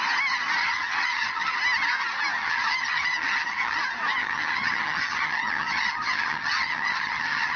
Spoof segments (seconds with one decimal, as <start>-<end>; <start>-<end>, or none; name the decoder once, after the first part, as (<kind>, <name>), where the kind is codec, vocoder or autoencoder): 0.6-1.5 (vocoder, HiFi-GAN); 2.4-3.8; 4.2-7.6